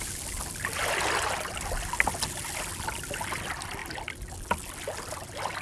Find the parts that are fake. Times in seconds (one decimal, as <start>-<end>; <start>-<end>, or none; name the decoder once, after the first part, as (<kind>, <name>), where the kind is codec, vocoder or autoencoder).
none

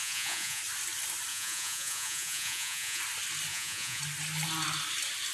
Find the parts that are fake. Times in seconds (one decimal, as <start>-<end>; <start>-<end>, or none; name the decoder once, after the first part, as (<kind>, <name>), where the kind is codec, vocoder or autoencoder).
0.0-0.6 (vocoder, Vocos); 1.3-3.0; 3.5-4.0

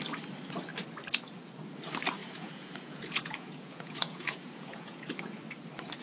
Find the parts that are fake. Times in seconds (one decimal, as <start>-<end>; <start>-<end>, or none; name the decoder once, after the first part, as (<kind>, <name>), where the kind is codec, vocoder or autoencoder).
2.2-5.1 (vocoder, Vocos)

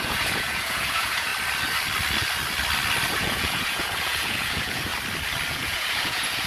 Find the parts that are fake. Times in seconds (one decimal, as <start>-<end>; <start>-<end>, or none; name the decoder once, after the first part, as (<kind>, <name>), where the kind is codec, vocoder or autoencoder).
0.0-1.3 (vocoder, Vocos); 3.1-4.9; 5.5-6.5